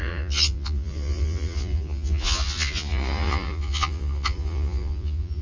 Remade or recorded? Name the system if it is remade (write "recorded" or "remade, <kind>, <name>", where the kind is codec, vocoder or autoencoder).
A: remade, vocoder, Vocos